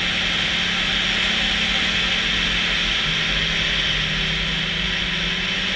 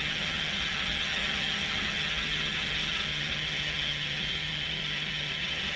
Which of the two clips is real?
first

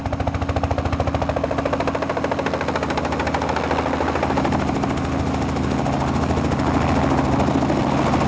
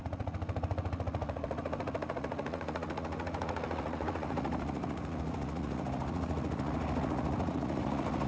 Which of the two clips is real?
first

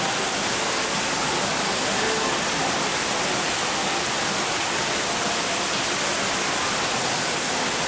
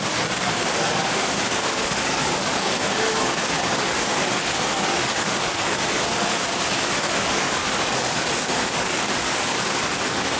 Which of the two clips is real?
first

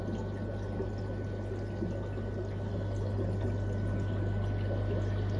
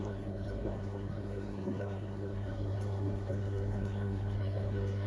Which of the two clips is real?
first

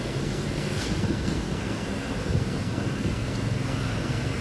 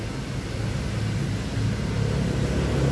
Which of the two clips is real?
second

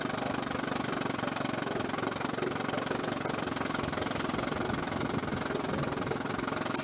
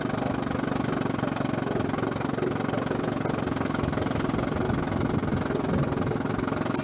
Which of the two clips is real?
second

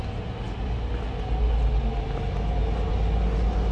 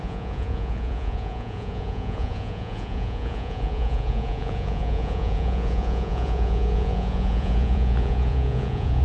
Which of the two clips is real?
first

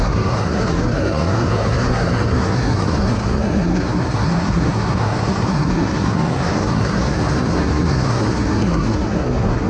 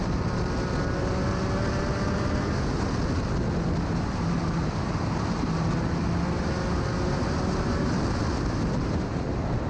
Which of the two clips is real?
second